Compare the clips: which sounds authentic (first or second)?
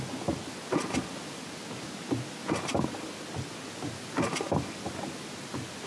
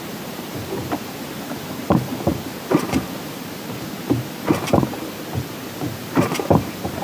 first